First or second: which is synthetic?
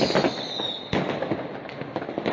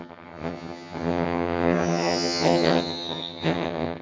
second